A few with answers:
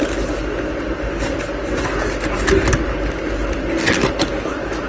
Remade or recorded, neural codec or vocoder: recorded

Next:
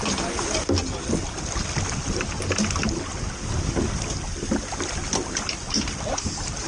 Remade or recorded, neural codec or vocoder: recorded